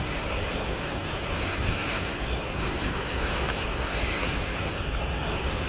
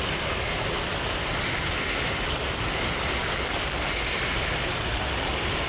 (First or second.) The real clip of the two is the second